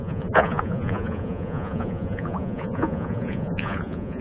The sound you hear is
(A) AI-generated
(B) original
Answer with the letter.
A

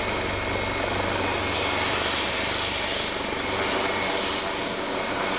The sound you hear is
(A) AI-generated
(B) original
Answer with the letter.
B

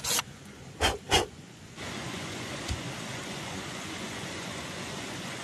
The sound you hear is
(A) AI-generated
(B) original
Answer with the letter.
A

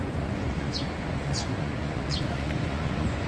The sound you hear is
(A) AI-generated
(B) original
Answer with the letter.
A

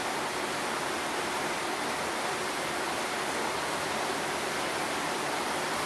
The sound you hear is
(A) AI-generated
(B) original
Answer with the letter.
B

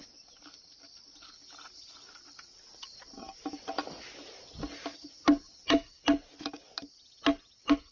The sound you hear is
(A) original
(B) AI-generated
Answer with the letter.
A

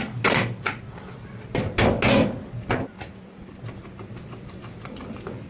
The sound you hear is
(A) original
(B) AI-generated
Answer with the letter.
A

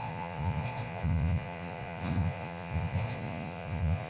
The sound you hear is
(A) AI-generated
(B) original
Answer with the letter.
A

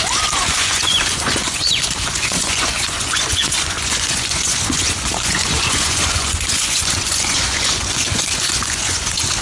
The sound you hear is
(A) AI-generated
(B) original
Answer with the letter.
A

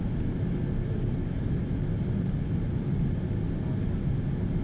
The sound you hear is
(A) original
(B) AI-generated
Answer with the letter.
A